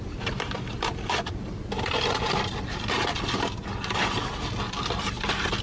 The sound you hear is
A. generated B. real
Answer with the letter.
B